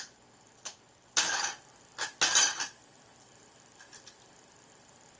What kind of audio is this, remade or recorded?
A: recorded